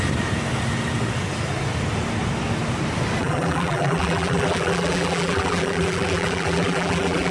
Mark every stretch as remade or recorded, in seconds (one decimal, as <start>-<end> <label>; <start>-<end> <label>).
0.0-3.2 recorded; 3.2-7.3 remade